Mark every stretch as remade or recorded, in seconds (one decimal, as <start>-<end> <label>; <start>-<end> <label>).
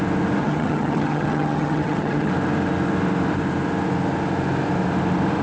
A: 0.0-0.4 recorded; 0.4-2.3 remade; 2.3-5.4 recorded